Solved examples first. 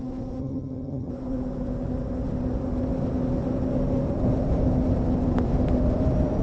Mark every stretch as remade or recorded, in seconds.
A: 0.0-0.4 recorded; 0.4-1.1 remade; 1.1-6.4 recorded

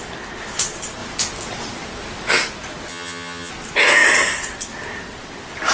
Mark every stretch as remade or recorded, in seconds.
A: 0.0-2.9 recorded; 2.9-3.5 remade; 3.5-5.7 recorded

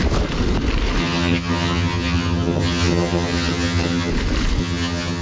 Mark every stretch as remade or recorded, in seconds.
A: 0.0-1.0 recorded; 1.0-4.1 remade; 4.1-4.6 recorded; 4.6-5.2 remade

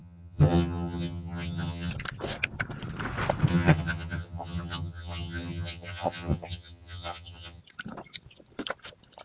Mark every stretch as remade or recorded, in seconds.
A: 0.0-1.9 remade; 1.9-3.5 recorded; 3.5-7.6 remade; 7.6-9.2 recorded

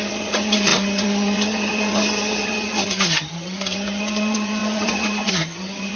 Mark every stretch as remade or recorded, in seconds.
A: 0.0-6.0 remade

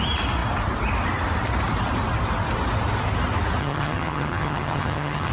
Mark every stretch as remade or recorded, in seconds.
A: 0.0-3.6 recorded; 3.6-5.3 remade

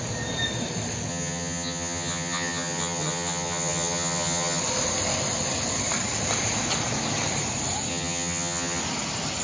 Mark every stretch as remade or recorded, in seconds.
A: 0.0-1.1 recorded; 1.1-4.6 remade; 4.6-7.9 recorded; 7.9-8.8 remade; 8.8-9.4 recorded

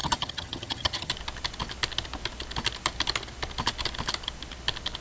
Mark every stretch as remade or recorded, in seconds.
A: 0.0-1.1 remade; 1.1-5.0 recorded